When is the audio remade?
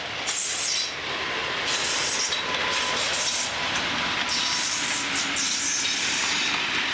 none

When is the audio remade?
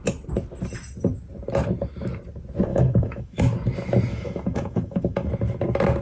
2.7-3.4 (autoencoder, DAC-VAE); 4.1-5.3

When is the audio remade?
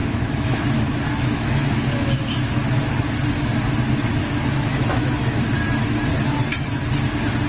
0.0-2.8 (autoencoder, DAC-VAE); 4.2-5.4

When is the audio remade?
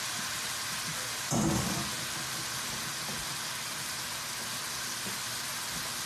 none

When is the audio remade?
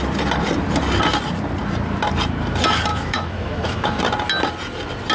2.9-4.0 (autoencoder, DAC-VAE)